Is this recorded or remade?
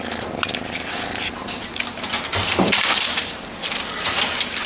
recorded